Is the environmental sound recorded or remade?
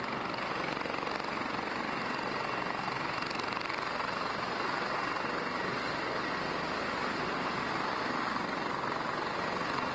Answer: recorded